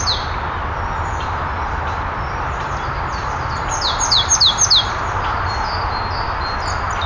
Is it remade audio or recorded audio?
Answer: recorded